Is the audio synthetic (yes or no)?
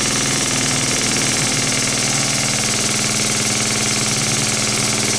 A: no